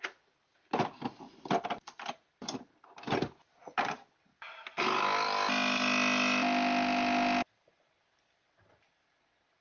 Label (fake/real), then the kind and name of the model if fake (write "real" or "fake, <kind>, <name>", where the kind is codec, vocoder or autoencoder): real